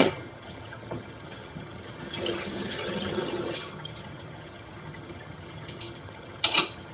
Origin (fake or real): fake